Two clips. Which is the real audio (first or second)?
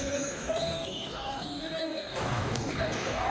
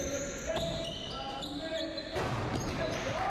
second